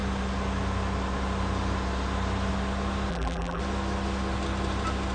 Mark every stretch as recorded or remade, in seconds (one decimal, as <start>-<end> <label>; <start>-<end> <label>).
0.0-3.1 recorded; 3.1-3.6 remade; 3.6-5.1 recorded